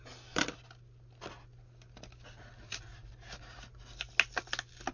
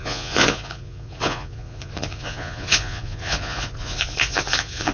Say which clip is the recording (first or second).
first